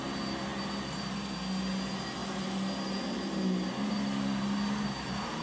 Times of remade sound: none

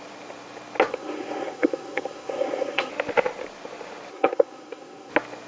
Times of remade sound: 0.9-2.9; 4.1-5.1

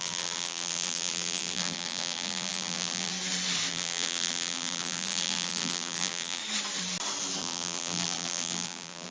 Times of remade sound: 0.0-3.1; 3.7-6.4; 7.4-9.1

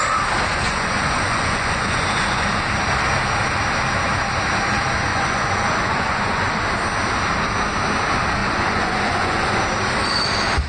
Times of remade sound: 0.5-2.5; 5.1-6.5; 8.4-9.6

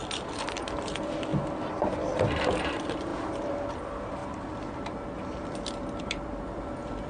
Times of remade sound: 0.0-1.3; 2.5-4.2; 5.4-7.1

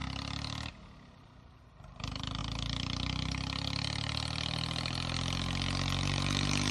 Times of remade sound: 1.1-2.4; 6.0-6.7